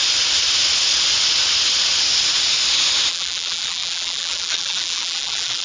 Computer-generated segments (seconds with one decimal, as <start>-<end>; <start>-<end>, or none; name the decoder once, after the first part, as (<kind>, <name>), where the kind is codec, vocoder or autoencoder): 3.1-5.6 (vocoder, BigVGAN v2)